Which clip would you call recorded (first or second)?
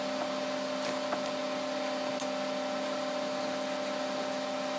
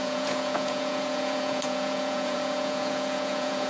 first